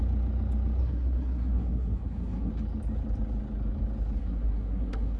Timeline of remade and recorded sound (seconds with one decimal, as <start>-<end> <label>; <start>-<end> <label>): 0.0-0.8 recorded; 0.8-2.5 remade; 2.5-4.2 recorded; 4.2-5.2 remade